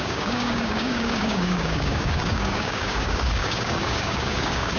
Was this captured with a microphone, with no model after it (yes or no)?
no